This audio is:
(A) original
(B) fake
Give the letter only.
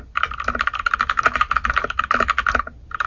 A